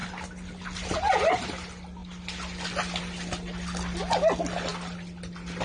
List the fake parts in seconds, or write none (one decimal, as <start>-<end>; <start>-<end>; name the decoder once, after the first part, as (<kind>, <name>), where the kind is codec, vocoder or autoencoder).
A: none